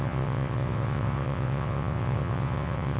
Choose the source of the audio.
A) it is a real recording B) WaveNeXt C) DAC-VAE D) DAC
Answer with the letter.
B